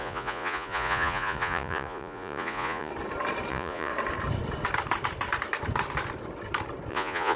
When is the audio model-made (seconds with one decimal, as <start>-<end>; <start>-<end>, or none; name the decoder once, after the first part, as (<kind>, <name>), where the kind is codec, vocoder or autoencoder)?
0.0-2.9 (vocoder, Vocos); 3.5-3.9; 6.9-7.4